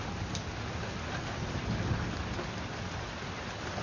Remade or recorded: recorded